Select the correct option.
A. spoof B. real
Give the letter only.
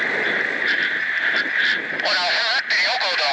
B